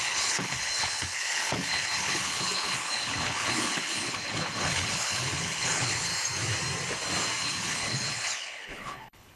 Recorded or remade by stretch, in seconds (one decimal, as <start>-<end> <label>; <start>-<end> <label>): 0.0-6.1 remade; 6.1-7.4 recorded; 7.4-9.4 remade